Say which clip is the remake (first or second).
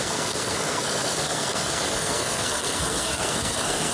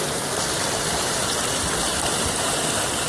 first